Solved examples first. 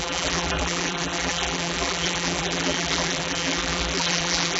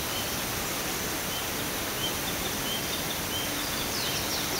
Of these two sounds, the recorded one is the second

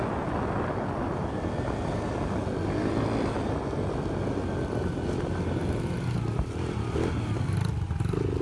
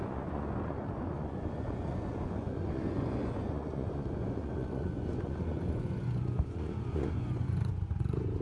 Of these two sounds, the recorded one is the first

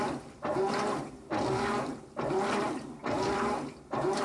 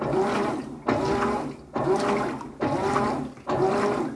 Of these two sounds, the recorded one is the second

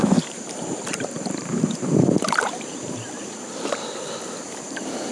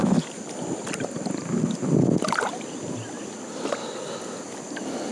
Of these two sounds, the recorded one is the second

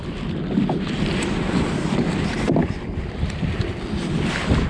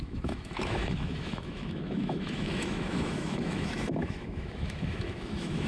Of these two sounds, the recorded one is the first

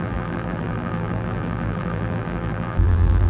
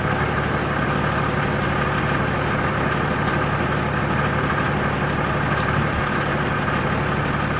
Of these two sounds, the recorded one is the second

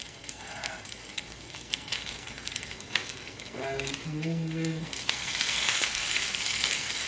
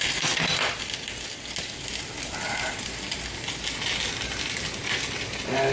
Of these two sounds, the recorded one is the second